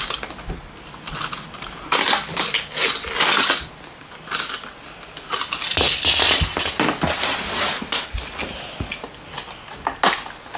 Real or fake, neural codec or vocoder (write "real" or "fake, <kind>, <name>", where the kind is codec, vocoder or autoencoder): real